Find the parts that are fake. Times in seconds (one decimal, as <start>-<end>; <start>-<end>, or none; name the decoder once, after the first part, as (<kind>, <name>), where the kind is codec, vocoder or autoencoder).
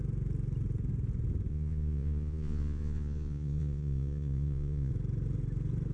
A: 1.5-4.9 (vocoder, Vocos)